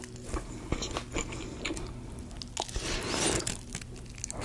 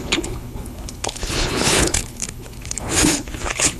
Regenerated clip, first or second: second